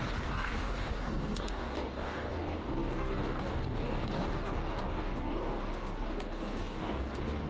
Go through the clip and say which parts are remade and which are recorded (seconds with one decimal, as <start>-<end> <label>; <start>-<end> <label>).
0.0-7.5 remade